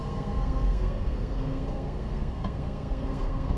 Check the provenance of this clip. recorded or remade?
remade